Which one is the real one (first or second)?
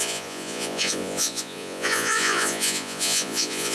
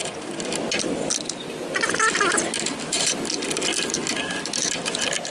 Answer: second